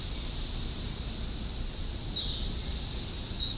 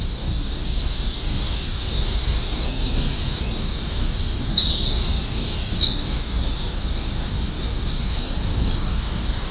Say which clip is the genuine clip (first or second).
first